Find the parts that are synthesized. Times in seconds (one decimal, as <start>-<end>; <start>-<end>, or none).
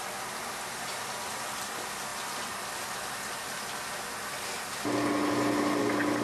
none